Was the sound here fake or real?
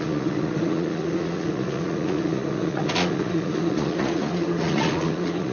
fake